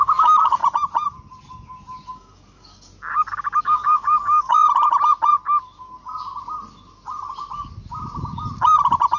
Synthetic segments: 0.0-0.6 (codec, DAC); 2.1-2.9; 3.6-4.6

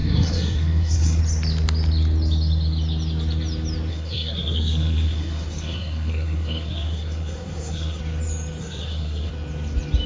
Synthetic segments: 0.0-1.2 (codec, SNAC); 3.9-8.0; 8.6-9.3

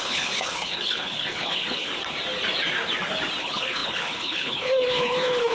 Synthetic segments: 0.0-1.9 (codec, HILCodec); 3.4-5.5

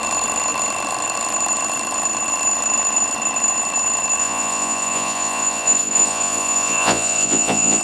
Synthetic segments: 4.2-7.8 (vocoder, Vocos)

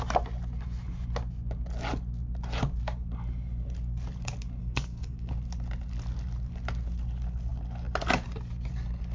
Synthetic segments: 4.6-5.3 (codec, SNAC)

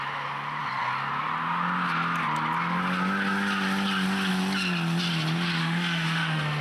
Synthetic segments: 5.6-6.6 (autoencoder, DAC-VAE)

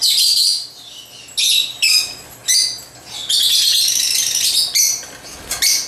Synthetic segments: none